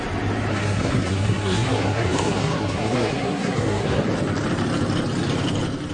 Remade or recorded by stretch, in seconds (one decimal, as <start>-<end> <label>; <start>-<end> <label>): 0.0-0.5 recorded; 0.5-4.0 remade; 4.0-5.9 recorded